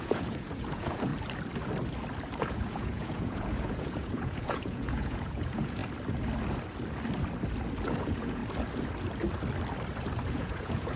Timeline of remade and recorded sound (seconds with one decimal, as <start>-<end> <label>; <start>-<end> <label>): 0.0-1.1 remade; 1.1-2.4 recorded; 2.4-5.8 remade; 5.8-8.0 recorded; 8.0-8.4 remade; 8.4-10.3 recorded; 10.3-11.0 remade